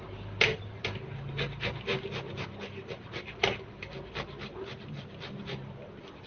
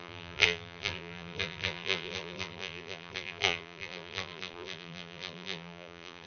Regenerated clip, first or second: second